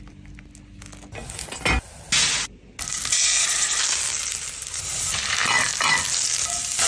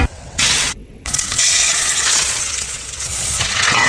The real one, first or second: first